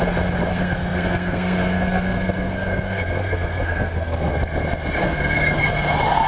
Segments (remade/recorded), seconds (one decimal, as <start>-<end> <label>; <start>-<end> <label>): 0.0-0.5 recorded; 0.5-4.3 remade; 4.3-5.0 recorded; 5.0-5.7 remade; 5.7-6.3 recorded